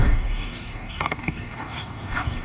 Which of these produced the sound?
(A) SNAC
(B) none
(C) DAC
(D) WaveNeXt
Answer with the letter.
C